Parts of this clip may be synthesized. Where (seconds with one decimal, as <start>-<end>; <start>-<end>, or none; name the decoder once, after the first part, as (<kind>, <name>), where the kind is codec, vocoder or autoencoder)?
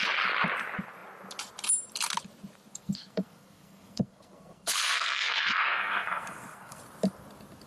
2.7-6.8 (codec, SNAC)